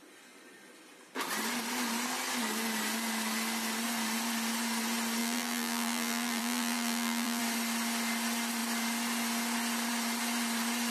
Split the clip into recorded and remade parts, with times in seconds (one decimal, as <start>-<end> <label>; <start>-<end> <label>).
0.0-5.2 recorded; 5.2-7.4 remade; 7.4-10.9 recorded